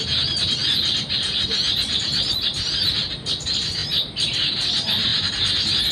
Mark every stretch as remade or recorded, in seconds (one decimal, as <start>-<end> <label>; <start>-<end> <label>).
0.0-5.9 recorded